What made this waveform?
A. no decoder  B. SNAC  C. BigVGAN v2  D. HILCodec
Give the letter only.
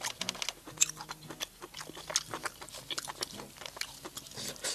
A